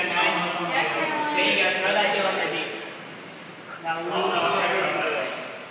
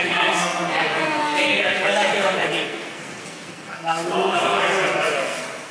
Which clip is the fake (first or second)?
second